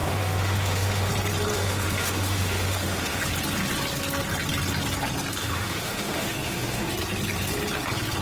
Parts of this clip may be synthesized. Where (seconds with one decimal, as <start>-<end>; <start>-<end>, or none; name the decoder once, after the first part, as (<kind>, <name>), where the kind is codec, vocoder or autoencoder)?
0.0-1.1 (autoencoder, DAC-VAE); 1.5-3.2; 5.4-6.9